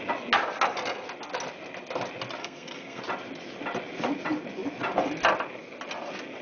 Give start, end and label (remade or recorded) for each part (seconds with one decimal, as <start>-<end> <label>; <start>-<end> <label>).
0.0-2.4 recorded; 2.4-3.0 remade; 3.0-6.4 recorded